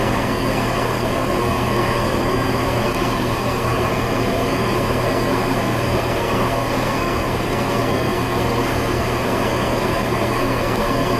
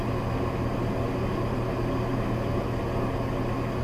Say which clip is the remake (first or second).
first